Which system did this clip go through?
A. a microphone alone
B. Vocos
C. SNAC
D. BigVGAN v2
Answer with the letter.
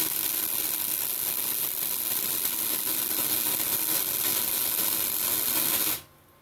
A